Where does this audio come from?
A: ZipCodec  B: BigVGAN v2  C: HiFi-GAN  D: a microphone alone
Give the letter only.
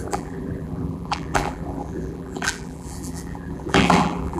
B